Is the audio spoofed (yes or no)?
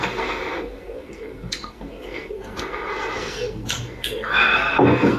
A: yes